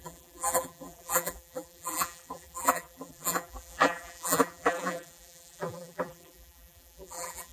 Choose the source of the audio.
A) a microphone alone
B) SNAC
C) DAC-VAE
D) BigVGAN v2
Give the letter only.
D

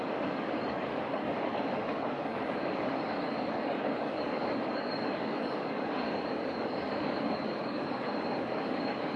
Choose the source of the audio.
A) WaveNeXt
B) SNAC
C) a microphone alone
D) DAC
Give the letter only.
D